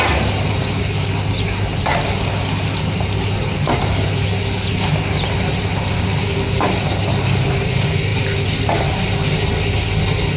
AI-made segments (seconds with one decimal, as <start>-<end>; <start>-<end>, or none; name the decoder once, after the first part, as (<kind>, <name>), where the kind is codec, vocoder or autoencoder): none